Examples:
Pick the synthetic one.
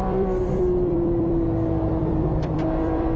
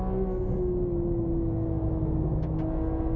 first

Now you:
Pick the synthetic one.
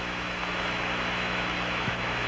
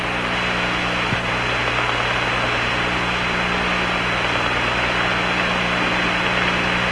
first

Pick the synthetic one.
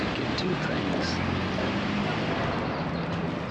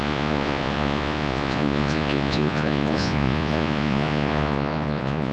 second